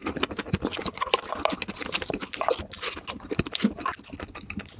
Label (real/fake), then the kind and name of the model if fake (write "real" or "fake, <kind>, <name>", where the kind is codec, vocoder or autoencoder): real